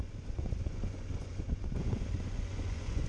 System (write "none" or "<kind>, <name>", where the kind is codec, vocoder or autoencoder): vocoder, Vocos